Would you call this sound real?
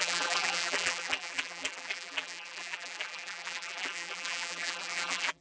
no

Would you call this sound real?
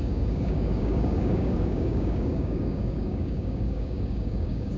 no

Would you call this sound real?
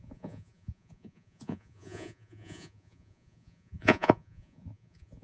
no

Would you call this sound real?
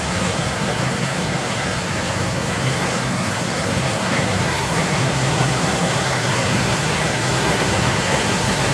no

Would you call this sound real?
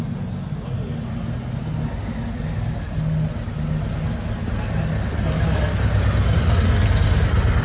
yes